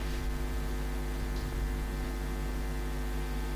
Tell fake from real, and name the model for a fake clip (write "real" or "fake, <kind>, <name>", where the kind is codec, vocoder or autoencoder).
real